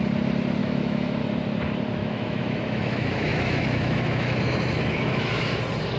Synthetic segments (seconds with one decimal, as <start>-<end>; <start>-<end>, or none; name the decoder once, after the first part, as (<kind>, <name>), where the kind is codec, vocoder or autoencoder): 0.6-1.2 (autoencoder, DAC-VAE); 2.0-5.6